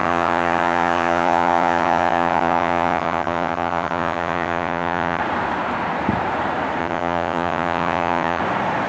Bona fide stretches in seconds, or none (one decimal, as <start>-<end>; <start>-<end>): 5.2-6.8; 8.4-8.9